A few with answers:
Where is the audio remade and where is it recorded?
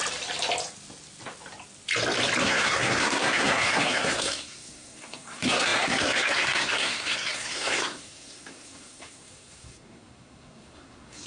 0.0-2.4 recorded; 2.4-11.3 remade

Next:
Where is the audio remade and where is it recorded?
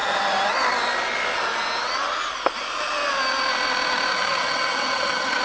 0.0-4.1 recorded; 4.1-5.4 remade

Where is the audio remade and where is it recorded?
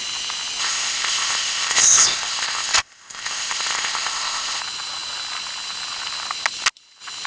0.0-0.6 recorded; 0.6-4.6 remade; 4.6-7.3 recorded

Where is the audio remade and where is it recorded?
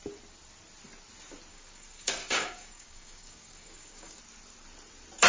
0.0-1.5 recorded; 1.5-4.2 remade; 4.2-5.3 recorded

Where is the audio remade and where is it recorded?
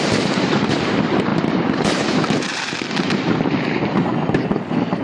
0.0-4.1 remade; 4.1-5.0 recorded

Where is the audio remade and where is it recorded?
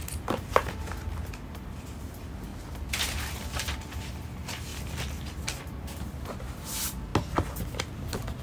0.0-0.6 remade; 0.6-1.5 recorded; 1.5-2.5 remade; 2.5-4.0 recorded; 4.0-4.7 remade; 4.7-5.5 recorded; 5.5-7.1 remade; 7.1-7.6 recorded; 7.6-8.4 remade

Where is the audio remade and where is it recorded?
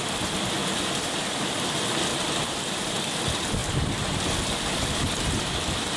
0.0-2.1 recorded; 2.1-2.9 remade; 2.9-6.0 recorded